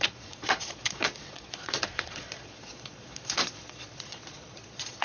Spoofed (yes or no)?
yes